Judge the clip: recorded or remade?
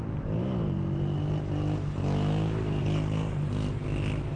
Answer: recorded